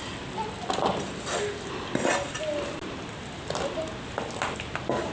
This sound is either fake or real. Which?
real